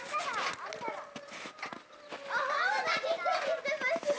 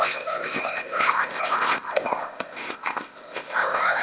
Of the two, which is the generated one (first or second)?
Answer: second